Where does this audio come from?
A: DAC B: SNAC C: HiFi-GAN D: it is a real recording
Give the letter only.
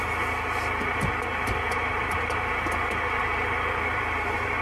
D